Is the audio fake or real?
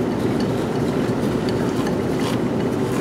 real